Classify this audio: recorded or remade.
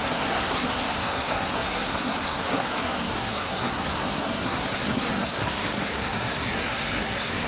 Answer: remade